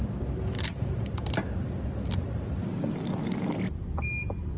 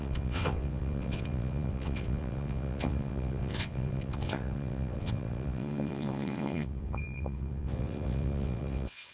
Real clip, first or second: first